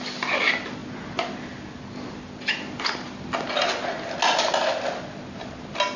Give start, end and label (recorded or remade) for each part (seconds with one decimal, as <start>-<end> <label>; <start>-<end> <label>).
0.0-6.0 recorded